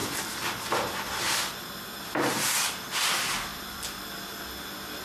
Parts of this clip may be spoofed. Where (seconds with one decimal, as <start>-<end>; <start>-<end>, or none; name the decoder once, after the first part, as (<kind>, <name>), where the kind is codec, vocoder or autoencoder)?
3.5-4.0 (vocoder, BigVGAN v2)